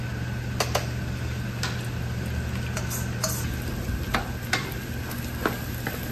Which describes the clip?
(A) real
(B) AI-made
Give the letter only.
A